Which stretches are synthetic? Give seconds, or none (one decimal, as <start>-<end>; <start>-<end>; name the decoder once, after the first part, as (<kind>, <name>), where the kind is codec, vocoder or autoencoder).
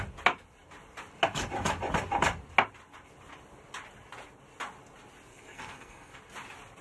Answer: 5.3-6.2 (codec, SNAC)